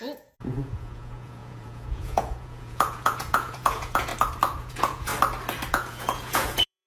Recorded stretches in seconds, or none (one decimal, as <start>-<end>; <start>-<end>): 4.1-4.6; 5.1-5.7